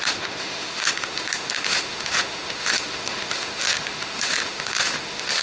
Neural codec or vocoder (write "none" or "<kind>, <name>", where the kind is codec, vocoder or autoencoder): autoencoder, DAC-VAE